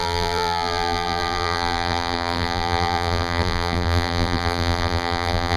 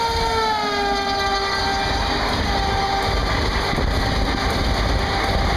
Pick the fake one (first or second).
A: first